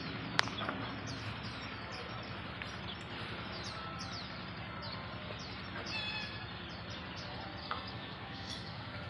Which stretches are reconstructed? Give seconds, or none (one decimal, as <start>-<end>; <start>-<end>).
7.6-9.1